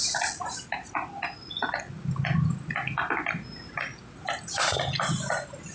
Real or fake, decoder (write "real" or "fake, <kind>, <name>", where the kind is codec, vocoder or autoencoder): real